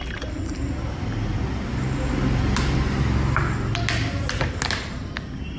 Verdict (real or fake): real